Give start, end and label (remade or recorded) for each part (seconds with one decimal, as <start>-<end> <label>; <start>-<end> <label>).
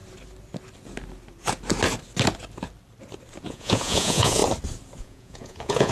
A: 0.0-3.5 recorded; 3.5-4.4 remade; 4.4-5.0 recorded; 5.0-5.9 remade